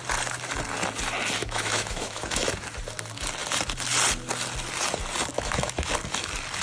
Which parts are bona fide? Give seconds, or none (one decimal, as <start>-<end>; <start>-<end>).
0.0-1.4; 2.5-5.3; 5.9-6.6